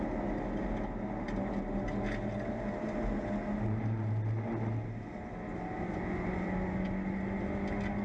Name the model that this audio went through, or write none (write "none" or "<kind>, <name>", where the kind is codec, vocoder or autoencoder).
none